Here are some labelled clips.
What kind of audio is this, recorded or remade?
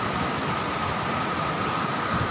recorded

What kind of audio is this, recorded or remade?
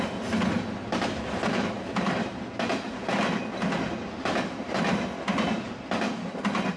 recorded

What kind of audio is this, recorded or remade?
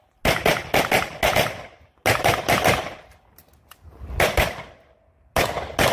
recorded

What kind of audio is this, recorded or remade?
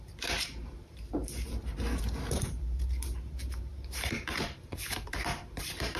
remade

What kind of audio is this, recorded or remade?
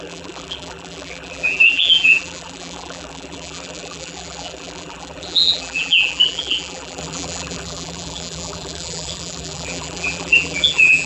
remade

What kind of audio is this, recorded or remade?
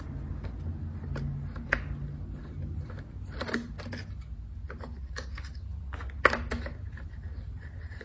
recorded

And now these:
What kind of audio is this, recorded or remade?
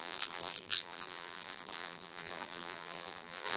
remade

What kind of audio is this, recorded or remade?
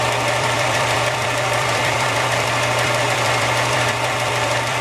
remade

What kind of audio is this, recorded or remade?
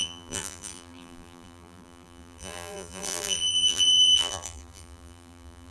remade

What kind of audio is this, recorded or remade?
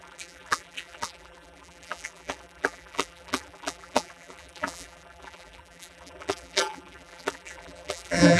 remade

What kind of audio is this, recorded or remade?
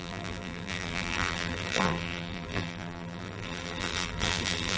remade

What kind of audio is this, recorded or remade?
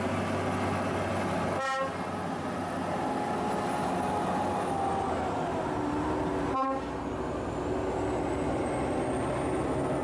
recorded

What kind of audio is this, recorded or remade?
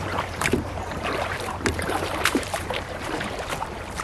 remade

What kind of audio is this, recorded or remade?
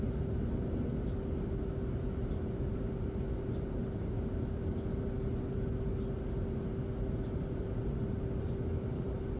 recorded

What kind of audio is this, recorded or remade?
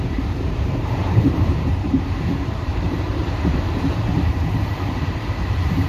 remade